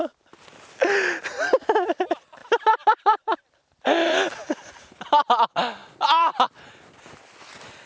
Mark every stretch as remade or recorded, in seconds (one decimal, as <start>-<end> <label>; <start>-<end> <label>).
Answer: 0.0-7.9 recorded